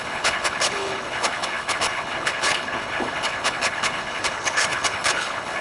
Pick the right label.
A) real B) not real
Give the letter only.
B